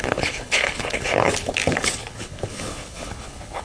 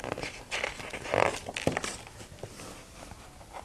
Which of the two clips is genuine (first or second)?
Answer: second